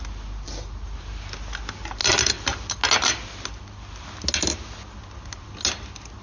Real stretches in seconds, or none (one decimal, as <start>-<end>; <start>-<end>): 0.0-2.0; 2.7-6.2

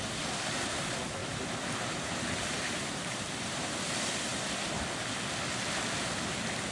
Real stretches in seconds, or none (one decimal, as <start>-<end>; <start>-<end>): 0.0-1.2; 3.8-6.7

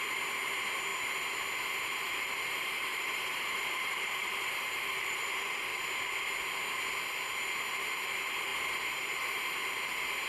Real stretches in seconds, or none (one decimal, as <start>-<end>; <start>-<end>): 0.0-2.9; 5.2-10.3

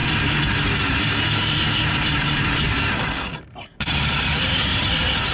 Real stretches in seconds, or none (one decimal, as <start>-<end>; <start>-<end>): 0.0-0.9

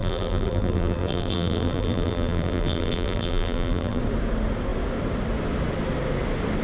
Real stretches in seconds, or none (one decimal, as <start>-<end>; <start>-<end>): 4.0-6.6

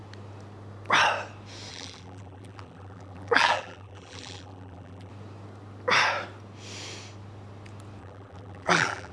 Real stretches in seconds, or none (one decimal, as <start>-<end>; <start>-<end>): 0.0-1.7; 5.1-8.0

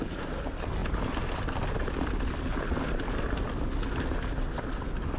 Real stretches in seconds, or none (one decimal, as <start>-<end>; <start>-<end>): 0.0-5.2

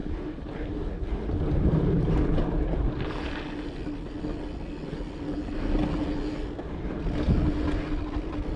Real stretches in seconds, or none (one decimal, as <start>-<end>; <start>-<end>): 0.7-8.6